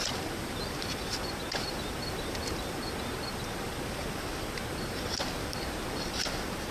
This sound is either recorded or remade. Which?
recorded